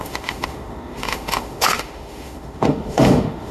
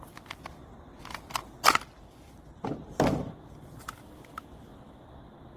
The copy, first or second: first